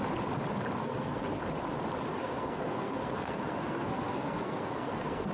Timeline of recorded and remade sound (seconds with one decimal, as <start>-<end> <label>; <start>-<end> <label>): 0.0-0.8 recorded; 0.8-1.4 remade; 1.4-2.1 recorded; 2.1-5.3 remade